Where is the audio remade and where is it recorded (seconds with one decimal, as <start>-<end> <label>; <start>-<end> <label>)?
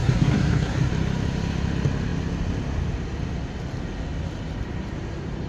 0.0-0.9 remade; 0.9-5.5 recorded